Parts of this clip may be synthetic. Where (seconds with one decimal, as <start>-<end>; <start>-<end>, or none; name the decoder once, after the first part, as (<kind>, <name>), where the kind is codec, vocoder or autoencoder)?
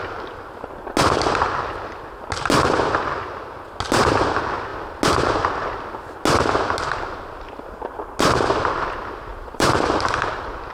9.3-10.7 (vocoder, BigVGAN v2)